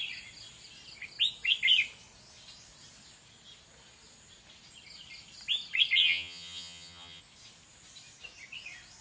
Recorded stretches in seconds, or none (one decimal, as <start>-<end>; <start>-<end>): 0.0-6.0; 7.2-9.0